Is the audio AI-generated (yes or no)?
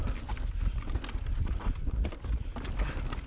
no